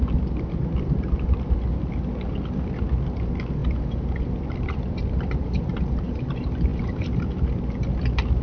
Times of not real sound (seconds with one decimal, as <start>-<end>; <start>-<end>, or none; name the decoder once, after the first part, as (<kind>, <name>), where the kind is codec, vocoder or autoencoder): 3.6-6.0 (vocoder, BigVGAN v2); 6.7-7.2